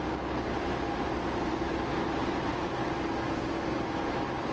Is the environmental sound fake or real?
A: real